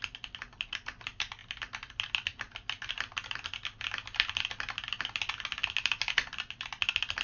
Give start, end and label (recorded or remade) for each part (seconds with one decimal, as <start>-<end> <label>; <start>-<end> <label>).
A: 0.0-7.2 recorded